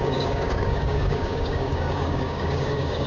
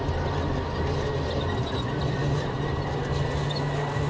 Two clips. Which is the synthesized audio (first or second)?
first